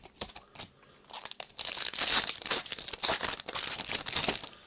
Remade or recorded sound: recorded